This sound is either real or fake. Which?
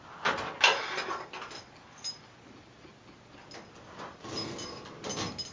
real